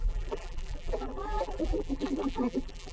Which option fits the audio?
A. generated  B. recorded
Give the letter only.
A